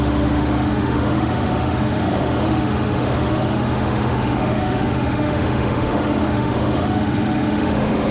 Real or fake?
fake